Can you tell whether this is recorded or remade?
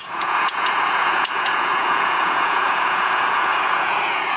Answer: remade